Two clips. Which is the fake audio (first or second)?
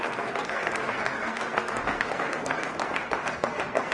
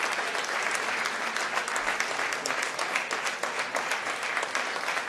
first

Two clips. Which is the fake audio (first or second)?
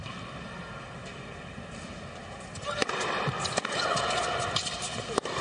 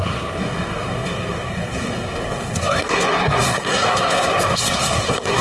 second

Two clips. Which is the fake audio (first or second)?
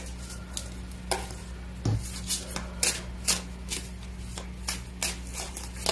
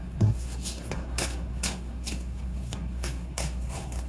second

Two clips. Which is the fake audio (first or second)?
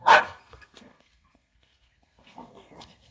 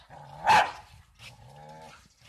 first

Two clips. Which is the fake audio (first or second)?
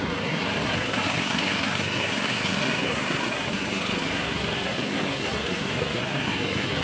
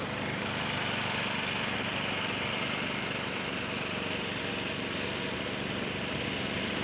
first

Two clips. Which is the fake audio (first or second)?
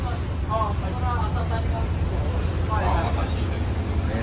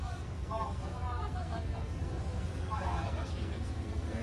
second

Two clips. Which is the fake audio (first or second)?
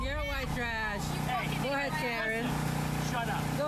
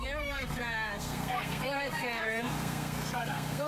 second